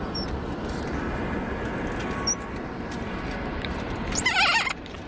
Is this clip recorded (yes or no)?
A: yes